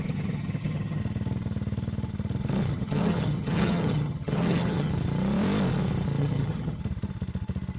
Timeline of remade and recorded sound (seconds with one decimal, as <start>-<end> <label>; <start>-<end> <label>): 0.0-1.0 remade; 1.0-2.7 recorded; 2.7-4.9 remade; 4.9-6.2 recorded; 6.2-6.8 remade; 6.8-7.8 recorded